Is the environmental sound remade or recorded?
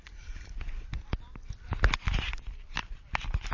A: recorded